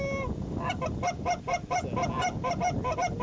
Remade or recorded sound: recorded